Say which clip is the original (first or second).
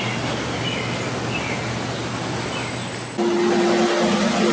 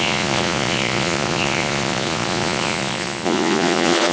first